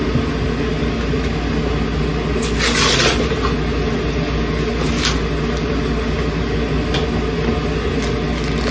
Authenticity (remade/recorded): recorded